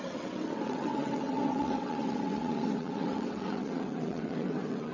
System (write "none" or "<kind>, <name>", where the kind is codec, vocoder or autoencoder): vocoder, WaveNeXt